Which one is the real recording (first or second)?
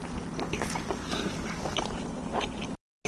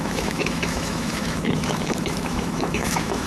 first